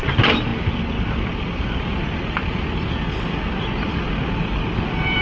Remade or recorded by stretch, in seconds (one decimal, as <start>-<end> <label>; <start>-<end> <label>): 0.0-0.5 remade; 0.5-3.6 recorded; 3.6-5.2 remade